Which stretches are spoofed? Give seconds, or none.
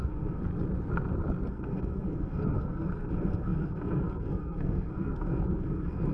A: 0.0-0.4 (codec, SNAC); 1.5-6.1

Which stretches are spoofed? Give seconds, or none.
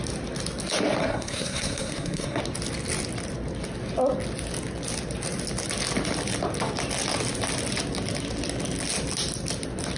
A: 1.0-2.4 (codec, SNAC)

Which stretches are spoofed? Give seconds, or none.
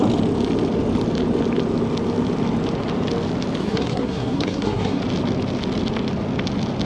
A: 3.6-5.0 (codec, SNAC)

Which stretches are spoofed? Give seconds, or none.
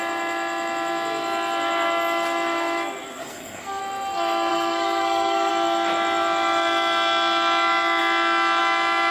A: 3.2-3.8 (codec, SNAC); 4.5-5.5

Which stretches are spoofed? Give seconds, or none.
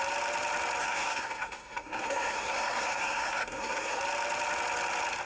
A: 0.8-4.0 (codec, SNAC)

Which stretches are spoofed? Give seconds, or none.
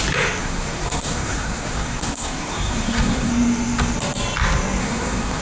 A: 0.4-3.3 (codec, SNAC); 4.8-5.4